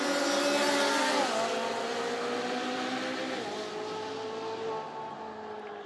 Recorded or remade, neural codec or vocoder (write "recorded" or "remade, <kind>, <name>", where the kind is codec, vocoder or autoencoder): recorded